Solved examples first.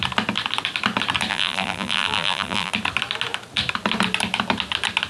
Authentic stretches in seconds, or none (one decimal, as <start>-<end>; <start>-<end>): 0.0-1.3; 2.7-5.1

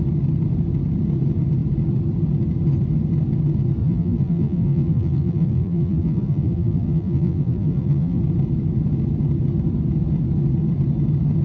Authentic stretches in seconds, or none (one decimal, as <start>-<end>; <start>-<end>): 0.0-3.8; 8.2-11.4

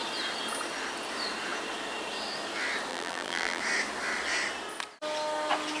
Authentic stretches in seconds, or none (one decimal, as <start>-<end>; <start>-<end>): 0.0-2.9; 3.6-5.8

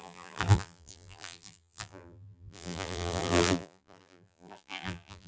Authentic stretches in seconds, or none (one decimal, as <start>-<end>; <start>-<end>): none